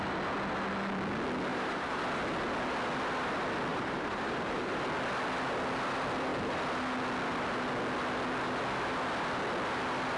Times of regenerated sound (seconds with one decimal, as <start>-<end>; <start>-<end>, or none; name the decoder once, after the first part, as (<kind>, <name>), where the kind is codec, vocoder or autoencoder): 1.5-2.0 (vocoder, BigVGAN v2); 3.7-4.8